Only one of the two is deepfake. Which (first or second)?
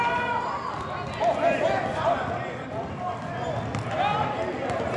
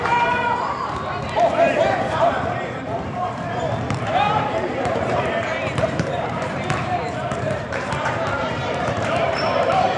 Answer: second